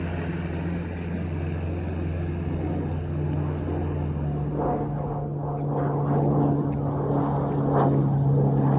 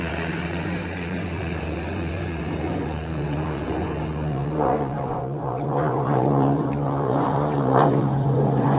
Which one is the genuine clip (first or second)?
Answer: first